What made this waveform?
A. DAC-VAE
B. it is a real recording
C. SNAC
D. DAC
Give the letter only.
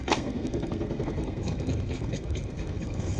C